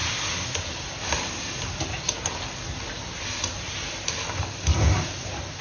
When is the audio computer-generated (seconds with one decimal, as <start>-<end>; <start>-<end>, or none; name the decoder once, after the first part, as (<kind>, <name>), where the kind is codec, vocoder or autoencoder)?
none